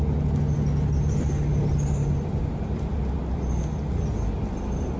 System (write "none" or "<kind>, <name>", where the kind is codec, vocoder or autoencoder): none